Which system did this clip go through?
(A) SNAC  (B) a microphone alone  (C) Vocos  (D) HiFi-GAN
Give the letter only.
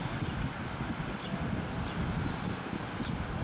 B